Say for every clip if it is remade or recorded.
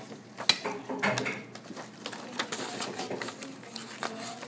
recorded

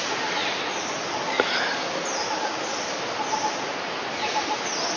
recorded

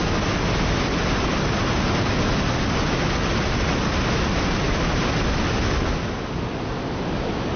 recorded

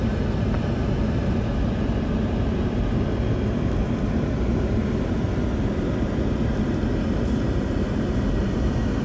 recorded